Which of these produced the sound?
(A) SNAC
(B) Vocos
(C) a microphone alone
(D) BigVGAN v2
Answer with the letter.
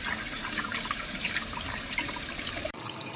D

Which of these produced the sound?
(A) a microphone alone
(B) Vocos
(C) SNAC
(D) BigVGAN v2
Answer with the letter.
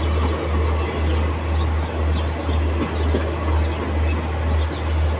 A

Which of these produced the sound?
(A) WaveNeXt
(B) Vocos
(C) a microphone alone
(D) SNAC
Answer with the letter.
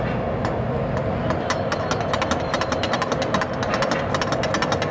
C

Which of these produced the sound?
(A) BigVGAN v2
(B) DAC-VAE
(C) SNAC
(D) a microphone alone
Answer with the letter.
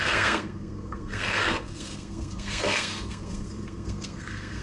C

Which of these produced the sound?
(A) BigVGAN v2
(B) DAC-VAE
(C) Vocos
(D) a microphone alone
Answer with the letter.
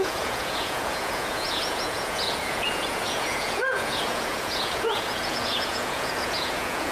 C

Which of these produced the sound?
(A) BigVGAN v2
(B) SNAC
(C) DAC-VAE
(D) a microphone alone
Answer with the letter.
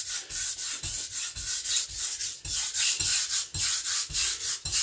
D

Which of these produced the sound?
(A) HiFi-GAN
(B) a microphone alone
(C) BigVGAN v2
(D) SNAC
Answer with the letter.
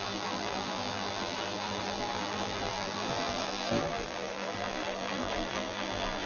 C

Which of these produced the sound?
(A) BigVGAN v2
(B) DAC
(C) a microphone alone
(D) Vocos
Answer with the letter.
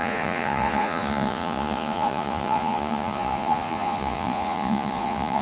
D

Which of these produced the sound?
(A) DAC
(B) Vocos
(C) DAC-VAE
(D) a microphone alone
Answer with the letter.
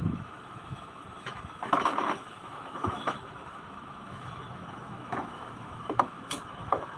C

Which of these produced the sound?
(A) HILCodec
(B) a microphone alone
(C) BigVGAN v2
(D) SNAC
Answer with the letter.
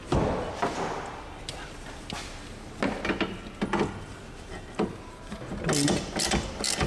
B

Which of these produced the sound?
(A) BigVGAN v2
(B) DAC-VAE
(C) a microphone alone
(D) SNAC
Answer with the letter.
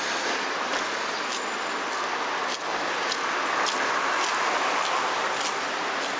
C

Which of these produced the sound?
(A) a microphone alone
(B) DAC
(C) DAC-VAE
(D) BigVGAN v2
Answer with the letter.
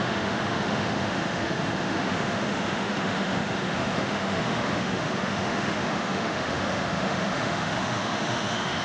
C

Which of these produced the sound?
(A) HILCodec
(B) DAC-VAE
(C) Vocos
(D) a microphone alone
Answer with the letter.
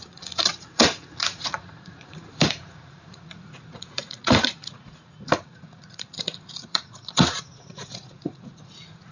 C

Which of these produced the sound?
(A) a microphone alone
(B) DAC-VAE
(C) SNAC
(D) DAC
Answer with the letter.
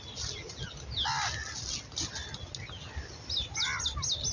A